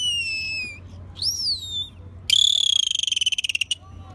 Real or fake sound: real